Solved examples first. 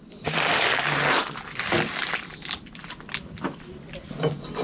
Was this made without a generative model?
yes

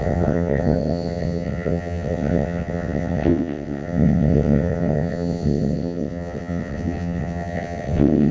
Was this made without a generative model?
no